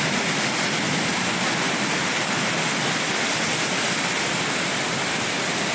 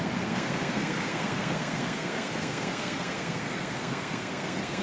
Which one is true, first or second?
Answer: first